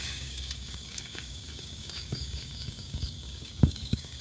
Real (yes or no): no